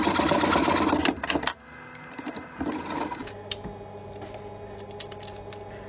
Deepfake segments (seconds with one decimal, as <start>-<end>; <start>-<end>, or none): none